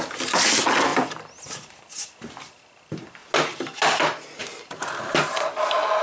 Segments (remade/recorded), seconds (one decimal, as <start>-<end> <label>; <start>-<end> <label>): 0.0-6.0 recorded